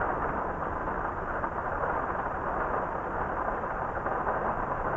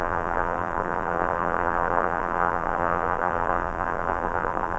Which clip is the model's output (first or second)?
second